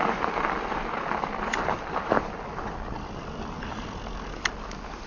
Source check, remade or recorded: recorded